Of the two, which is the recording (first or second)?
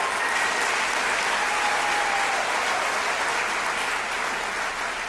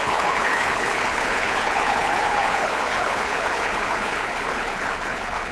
first